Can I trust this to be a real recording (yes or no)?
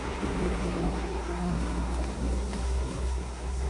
no